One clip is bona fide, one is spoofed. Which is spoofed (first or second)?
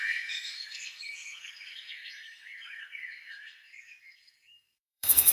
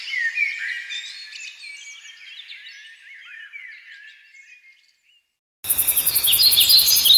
first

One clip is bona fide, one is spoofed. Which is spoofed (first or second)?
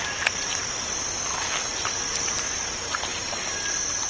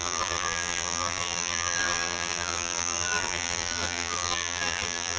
second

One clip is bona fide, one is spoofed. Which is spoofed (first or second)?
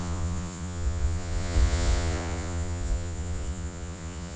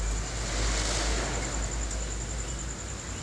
first